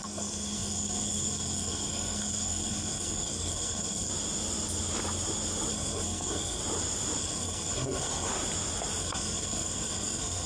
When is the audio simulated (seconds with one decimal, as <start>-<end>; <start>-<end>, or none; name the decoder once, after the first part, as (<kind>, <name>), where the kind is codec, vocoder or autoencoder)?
0.0-4.1 (codec, SNAC); 5.7-6.6; 7.2-8.3; 9.0-10.5